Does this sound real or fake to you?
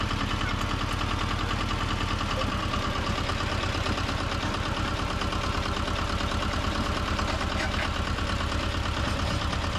real